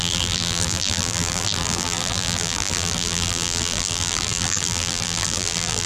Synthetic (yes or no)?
yes